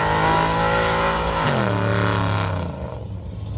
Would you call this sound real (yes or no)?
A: yes